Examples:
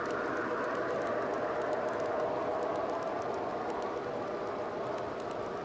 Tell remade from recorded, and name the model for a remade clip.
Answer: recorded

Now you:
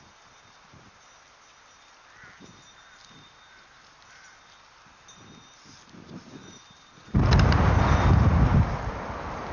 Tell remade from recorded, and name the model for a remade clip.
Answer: recorded